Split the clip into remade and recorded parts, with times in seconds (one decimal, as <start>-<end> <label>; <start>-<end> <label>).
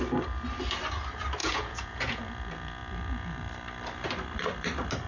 0.0-1.4 recorded; 1.4-2.2 remade; 2.2-5.1 recorded